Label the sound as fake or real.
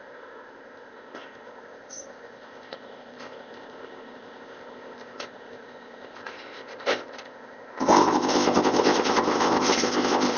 fake